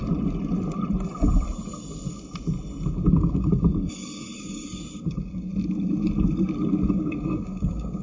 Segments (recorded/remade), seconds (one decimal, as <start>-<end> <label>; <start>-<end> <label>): 0.0-3.1 recorded; 3.1-5.5 remade; 5.5-6.9 recorded; 6.9-8.0 remade